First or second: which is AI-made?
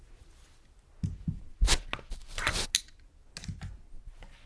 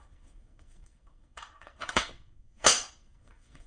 second